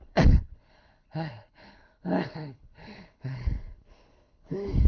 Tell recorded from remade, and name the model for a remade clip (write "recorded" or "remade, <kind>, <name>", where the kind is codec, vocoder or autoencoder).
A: remade, codec, HILCodec